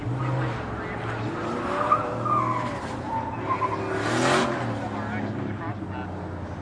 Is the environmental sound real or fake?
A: real